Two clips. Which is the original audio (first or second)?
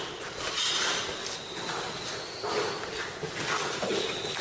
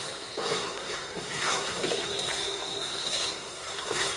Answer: first